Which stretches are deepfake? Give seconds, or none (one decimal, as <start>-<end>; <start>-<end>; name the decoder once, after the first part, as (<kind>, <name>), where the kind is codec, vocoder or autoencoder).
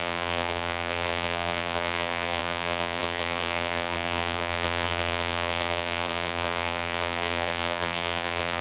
0.0-8.6 (vocoder, BigVGAN v2)